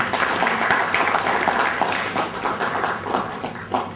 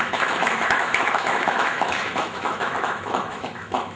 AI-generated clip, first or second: second